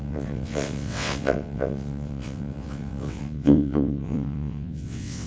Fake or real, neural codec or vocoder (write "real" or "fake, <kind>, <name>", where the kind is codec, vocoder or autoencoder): fake, vocoder, WaveNeXt